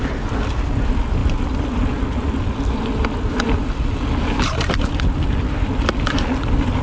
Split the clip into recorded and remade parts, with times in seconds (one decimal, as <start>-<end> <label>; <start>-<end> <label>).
0.0-6.8 recorded